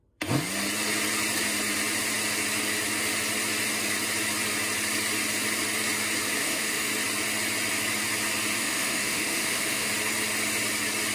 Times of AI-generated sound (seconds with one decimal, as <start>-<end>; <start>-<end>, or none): 6.4-6.9; 8.6-9.9